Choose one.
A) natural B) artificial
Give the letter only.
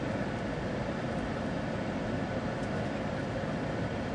A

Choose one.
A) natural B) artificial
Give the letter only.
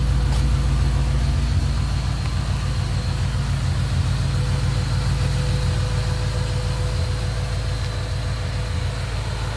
A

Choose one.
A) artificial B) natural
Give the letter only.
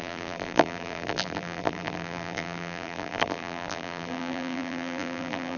A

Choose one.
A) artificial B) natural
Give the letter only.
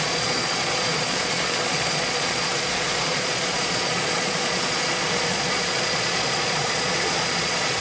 A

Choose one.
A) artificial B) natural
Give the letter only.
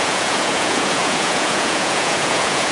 A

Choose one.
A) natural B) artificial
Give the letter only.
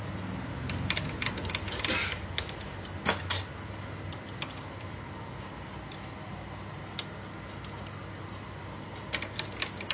A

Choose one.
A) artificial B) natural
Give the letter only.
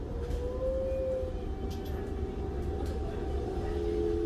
B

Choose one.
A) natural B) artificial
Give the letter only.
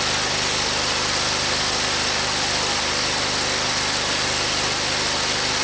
A